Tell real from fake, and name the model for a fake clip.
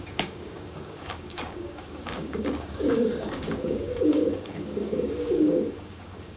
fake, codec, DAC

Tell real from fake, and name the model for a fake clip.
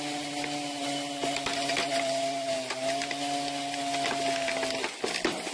real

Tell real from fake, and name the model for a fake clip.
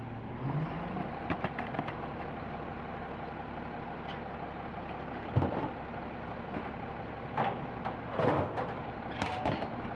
real